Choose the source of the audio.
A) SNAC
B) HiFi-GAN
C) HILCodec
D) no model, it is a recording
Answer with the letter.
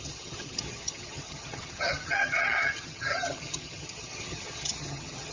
B